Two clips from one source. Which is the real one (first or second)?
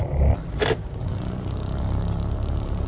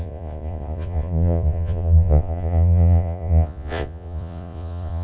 first